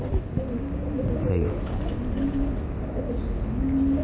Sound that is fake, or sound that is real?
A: real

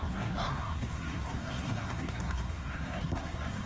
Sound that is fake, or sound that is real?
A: fake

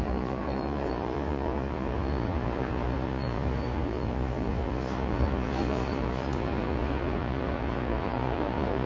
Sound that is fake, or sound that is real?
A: fake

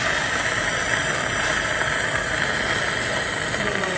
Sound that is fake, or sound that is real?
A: real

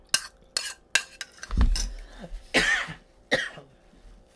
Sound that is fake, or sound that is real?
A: real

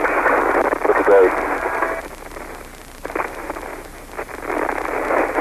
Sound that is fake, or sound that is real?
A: real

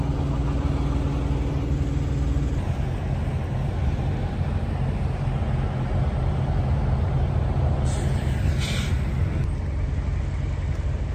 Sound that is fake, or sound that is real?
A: real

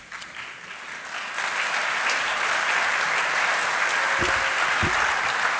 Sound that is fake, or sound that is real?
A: real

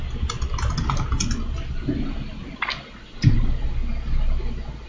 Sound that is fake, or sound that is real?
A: real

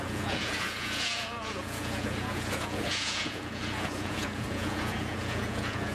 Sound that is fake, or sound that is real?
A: fake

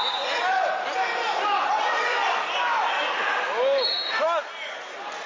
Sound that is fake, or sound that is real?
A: real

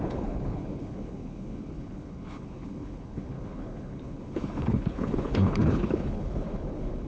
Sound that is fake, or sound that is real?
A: fake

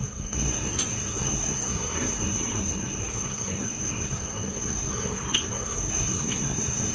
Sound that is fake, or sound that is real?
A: fake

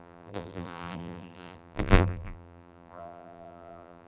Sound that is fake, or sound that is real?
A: fake